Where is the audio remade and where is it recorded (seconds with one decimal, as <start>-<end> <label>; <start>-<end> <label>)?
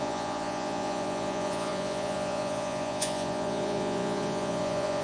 0.0-5.0 remade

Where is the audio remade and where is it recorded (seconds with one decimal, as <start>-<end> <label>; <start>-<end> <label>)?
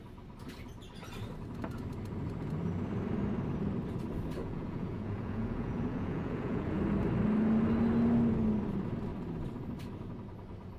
0.0-4.4 recorded; 4.4-6.8 remade; 6.8-10.8 recorded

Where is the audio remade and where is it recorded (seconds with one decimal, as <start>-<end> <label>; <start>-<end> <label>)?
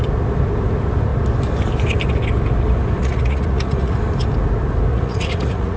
0.0-3.0 recorded; 3.0-4.0 remade; 4.0-4.9 recorded; 4.9-5.8 remade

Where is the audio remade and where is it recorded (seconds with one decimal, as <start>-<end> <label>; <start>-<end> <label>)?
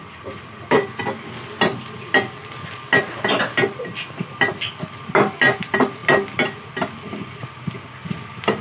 0.0-8.6 recorded